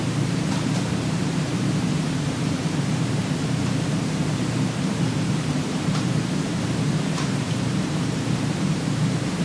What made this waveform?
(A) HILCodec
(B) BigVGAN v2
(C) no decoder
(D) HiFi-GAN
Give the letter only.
B